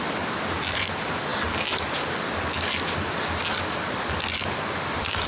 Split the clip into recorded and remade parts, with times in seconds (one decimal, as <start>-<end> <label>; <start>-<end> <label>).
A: 0.0-5.3 recorded